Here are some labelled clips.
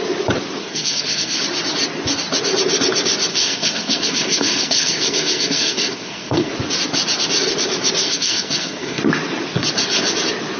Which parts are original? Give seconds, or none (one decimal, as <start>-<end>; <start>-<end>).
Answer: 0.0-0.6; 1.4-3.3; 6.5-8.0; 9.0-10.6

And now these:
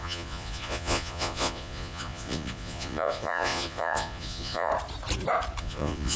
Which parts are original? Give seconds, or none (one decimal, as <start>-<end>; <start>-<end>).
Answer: 4.7-5.6

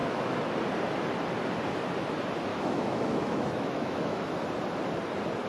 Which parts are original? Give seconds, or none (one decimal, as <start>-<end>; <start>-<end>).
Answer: 0.5-2.5; 4.3-5.5